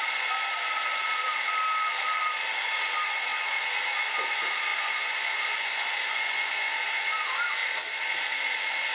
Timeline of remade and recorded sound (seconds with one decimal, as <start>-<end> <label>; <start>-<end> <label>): 0.0-4.7 recorded; 4.7-6.7 remade; 6.7-8.9 recorded